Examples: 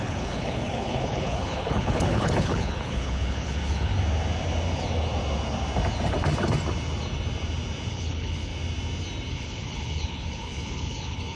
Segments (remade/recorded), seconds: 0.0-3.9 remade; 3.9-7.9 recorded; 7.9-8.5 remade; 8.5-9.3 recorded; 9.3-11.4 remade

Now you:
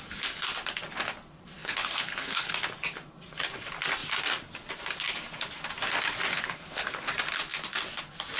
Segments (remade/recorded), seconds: 0.0-1.6 recorded; 1.6-2.5 remade; 2.5-6.3 recorded; 6.3-7.1 remade; 7.1-8.4 recorded

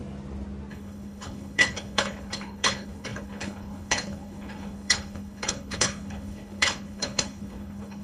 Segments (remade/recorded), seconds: 0.0-0.7 recorded; 0.7-8.0 remade

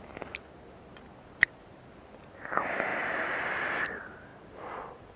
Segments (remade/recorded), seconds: 0.0-5.2 recorded

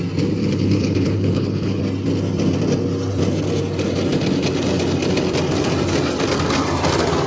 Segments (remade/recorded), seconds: 0.0-0.4 recorded; 0.4-1.8 remade; 1.8-7.3 recorded

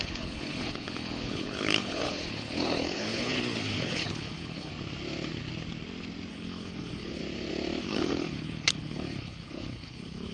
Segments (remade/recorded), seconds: 0.0-4.7 remade; 4.7-6.3 recorded; 6.3-7.2 remade; 7.2-7.8 recorded; 7.8-10.3 remade

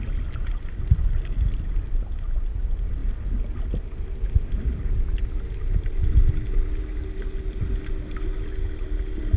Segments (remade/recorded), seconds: 0.0-9.4 recorded